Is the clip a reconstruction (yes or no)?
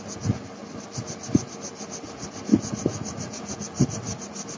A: no